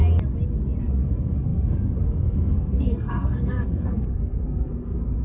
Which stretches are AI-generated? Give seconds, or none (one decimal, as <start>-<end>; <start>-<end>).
0.8-5.2